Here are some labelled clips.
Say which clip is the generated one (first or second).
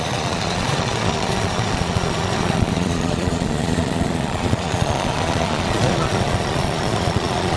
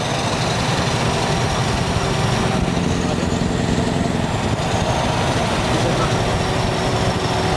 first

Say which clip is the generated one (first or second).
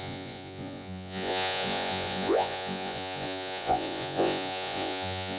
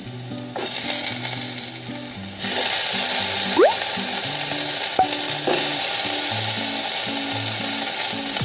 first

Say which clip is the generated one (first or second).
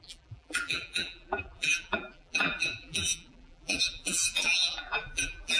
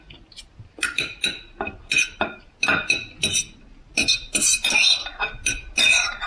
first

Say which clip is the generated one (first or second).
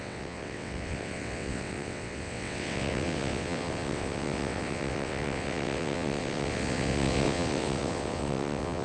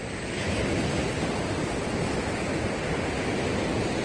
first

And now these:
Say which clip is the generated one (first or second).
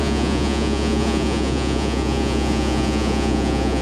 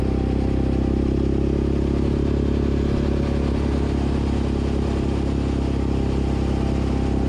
first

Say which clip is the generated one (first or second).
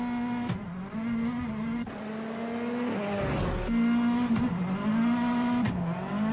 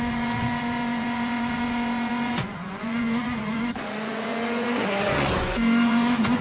second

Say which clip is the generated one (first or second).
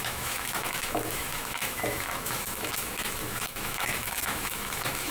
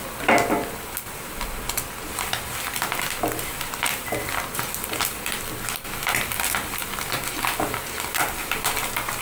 first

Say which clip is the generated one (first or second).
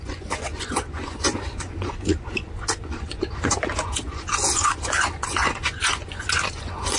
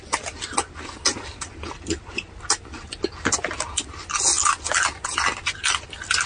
first